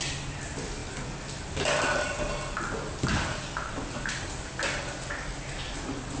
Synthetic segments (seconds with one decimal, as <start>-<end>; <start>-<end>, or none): none